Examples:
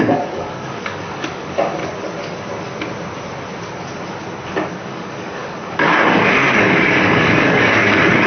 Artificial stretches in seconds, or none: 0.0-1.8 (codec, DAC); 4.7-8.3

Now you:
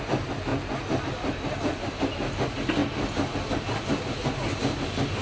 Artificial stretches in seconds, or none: none

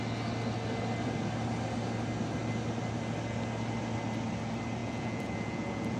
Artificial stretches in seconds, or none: 4.8-6.0 (vocoder, Vocos)